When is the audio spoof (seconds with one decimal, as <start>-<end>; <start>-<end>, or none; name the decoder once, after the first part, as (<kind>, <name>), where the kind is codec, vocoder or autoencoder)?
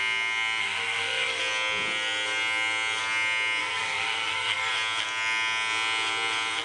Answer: 0.6-1.4 (codec, SNAC); 3.6-4.7